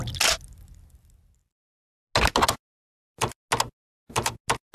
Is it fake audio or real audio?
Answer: real